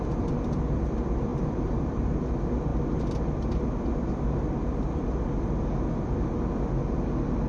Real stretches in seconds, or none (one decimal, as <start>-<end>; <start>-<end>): 0.0-1.3; 2.3-7.5